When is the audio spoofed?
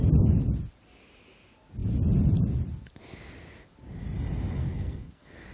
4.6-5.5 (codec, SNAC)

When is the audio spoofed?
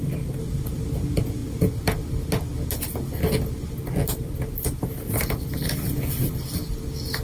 none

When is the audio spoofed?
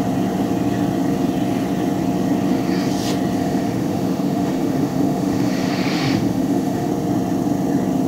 3.4-6.9 (autoencoder, DAC-VAE)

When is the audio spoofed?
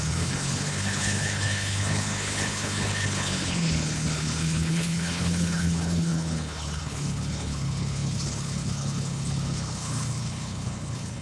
0.0-11.2 (codec, HILCodec)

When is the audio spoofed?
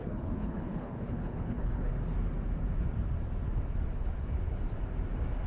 0.0-1.9 (codec, HILCodec)